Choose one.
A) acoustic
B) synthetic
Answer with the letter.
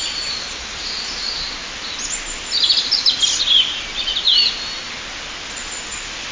A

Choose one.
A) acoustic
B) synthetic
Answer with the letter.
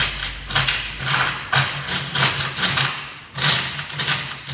A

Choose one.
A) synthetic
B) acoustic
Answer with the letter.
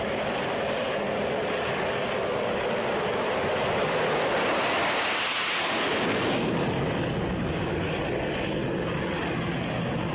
B